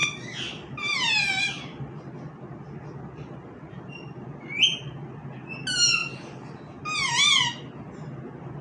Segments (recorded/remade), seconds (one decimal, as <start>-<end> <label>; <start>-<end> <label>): 0.0-8.6 recorded